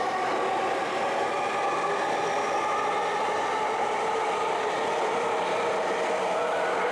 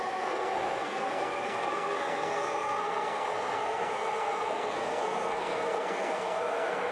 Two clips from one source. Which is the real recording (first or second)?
first